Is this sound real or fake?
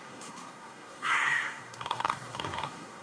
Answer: fake